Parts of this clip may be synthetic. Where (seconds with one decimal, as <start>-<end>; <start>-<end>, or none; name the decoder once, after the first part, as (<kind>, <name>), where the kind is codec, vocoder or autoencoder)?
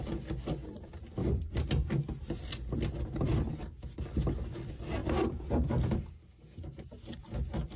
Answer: 1.2-2.5 (vocoder, BigVGAN v2)